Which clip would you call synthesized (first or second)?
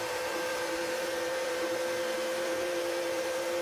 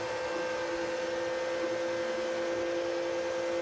first